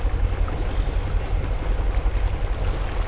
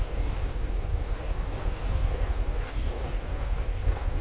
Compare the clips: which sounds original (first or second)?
first